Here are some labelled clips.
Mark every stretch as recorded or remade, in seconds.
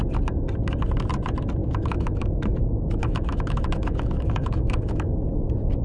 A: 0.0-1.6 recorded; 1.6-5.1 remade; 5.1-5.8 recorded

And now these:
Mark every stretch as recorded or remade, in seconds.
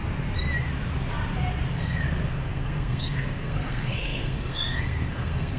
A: 0.0-1.7 recorded; 1.7-5.6 remade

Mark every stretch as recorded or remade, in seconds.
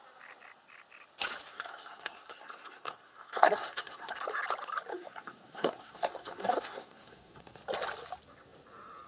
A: 0.0-1.5 recorded; 1.5-4.2 remade; 4.2-4.9 recorded; 4.9-7.4 remade; 7.4-9.1 recorded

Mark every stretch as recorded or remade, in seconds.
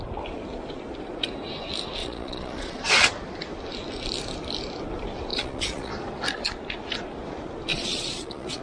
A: 0.0-2.0 recorded; 2.0-2.8 remade; 2.8-5.3 recorded; 5.3-5.9 remade; 5.9-7.7 recorded; 7.7-8.6 remade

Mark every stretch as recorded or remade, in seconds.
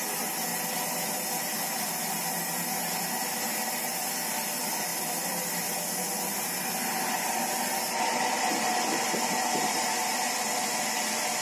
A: 0.0-11.4 recorded